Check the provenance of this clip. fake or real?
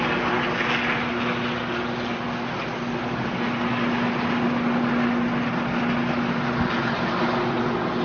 real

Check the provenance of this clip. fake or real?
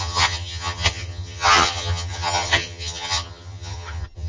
fake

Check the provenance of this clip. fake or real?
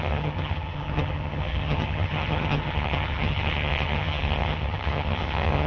fake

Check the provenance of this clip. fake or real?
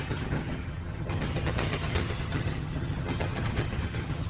fake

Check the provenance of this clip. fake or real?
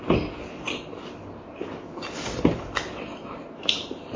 real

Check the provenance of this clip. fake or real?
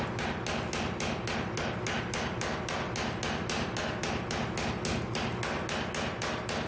real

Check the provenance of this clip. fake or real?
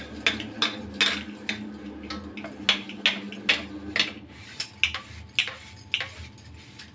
real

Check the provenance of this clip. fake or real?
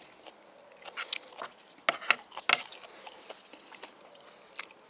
real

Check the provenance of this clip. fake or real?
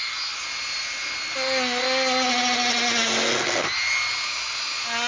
real